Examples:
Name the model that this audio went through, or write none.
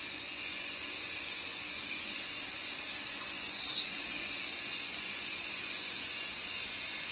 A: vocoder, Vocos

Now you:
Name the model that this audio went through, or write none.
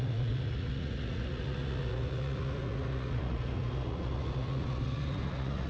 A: vocoder, Vocos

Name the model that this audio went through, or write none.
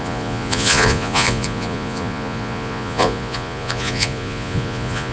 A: vocoder, Vocos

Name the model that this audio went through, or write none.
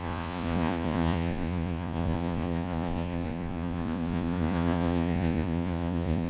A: vocoder, Vocos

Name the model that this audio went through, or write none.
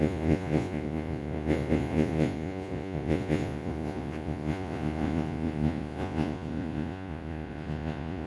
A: vocoder, Vocos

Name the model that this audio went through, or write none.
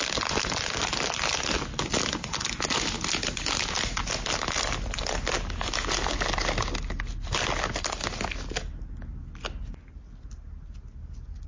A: none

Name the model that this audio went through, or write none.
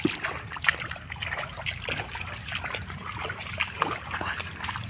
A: none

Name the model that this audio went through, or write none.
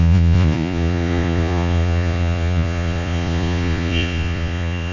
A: vocoder, Vocos